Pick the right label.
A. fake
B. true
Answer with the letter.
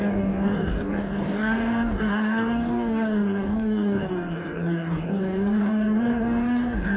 A